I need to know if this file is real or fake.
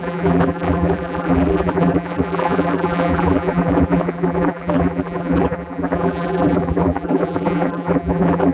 fake